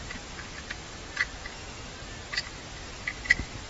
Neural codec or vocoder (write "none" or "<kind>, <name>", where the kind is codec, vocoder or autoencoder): none